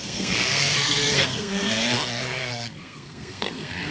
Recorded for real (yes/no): no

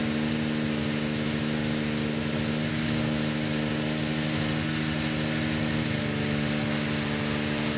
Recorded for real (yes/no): yes